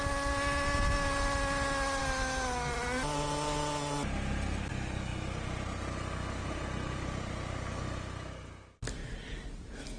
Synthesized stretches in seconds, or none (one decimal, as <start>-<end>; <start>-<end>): none

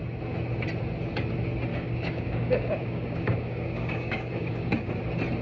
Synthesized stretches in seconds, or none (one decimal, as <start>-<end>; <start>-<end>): 1.7-4.9

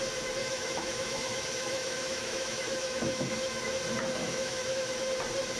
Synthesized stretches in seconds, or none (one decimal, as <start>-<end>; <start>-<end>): 0.4-3.8; 4.2-5.1

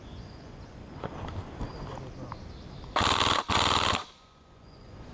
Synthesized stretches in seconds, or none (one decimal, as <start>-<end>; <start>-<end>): 0.0-1.1; 4.2-5.1

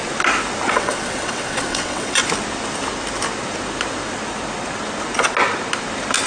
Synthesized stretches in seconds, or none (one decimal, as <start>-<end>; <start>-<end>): 0.7-2.2

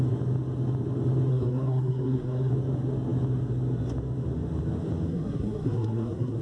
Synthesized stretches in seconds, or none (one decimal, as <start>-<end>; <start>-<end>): 1.3-2.5; 5.1-6.4

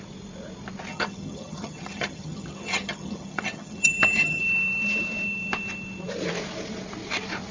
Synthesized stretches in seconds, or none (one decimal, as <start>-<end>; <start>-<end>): 0.9-4.4

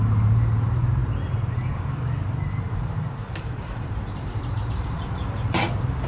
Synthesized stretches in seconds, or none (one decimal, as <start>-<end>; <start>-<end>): 0.0-6.1